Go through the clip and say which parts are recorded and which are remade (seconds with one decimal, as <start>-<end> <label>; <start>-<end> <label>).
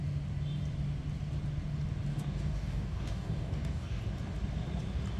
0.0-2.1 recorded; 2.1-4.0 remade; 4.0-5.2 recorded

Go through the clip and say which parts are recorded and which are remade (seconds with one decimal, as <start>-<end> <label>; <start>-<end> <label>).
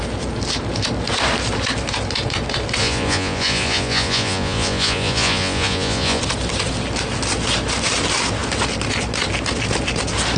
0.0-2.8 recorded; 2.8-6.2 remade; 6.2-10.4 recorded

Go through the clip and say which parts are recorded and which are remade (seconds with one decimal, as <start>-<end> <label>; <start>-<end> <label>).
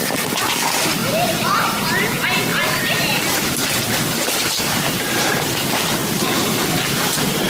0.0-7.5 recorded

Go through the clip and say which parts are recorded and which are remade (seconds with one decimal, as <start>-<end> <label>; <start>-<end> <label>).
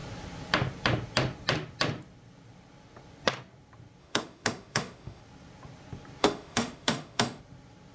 0.0-4.0 recorded; 4.0-5.2 remade; 5.2-6.2 recorded; 6.2-7.4 remade; 7.4-7.9 recorded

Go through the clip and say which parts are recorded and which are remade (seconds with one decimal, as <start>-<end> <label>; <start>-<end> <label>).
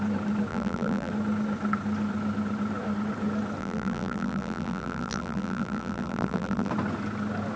0.0-0.5 recorded; 0.5-1.1 remade; 1.1-3.6 recorded; 3.6-6.7 remade; 6.7-7.6 recorded